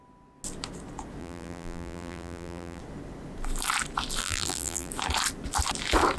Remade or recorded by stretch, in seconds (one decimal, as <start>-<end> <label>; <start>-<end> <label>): 0.0-1.2 recorded; 1.2-2.8 remade; 2.8-4.2 recorded; 4.2-4.9 remade; 4.9-6.2 recorded